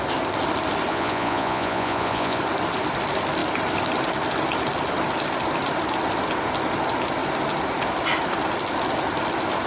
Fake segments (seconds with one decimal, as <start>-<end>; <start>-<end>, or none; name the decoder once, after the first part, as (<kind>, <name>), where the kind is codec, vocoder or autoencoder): 0.9-2.4 (vocoder, Vocos)